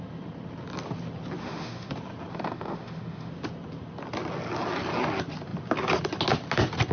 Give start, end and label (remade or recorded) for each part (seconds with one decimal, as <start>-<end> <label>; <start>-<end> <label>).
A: 0.0-1.4 recorded; 1.4-1.9 remade; 1.9-2.3 recorded; 2.3-3.3 remade; 3.3-6.9 recorded